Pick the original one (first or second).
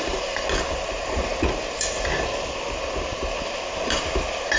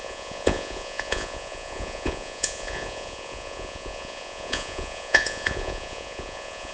first